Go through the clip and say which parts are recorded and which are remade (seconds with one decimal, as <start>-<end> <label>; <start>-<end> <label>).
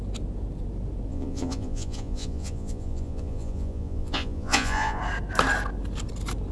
0.0-1.1 recorded; 1.1-5.0 remade; 5.0-6.5 recorded